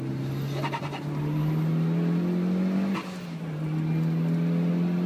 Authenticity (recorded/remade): recorded